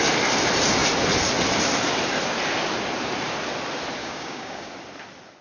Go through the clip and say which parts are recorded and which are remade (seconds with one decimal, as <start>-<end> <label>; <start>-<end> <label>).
0.0-4.0 recorded; 4.0-4.7 remade; 4.7-5.4 recorded